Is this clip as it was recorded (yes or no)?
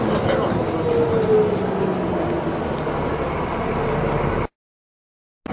yes